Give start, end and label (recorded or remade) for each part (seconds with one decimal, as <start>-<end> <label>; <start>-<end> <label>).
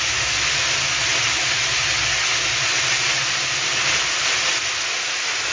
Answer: 0.0-5.5 recorded